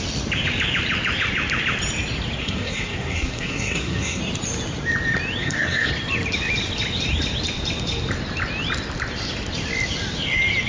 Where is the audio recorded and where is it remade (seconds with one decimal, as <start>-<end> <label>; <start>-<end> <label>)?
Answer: 0.0-2.4 recorded; 2.4-4.2 remade; 4.2-5.4 recorded; 5.4-5.9 remade; 5.9-10.7 recorded